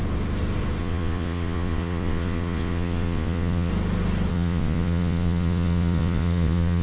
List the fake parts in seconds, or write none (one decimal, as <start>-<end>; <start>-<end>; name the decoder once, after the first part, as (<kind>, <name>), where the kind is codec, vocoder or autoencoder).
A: 0.8-3.7 (vocoder, Vocos); 4.3-6.8